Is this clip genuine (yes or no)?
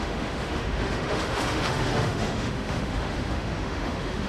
no